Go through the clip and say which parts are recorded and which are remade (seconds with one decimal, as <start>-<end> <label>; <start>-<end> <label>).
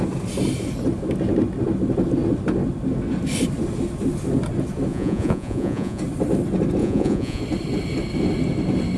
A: 0.0-4.9 recorded; 4.9-6.0 remade; 6.0-6.8 recorded; 6.8-7.4 remade; 7.4-9.0 recorded